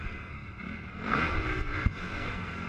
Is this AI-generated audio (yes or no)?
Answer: yes